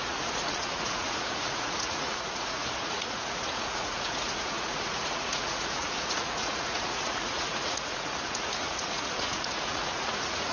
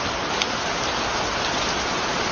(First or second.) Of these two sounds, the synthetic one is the first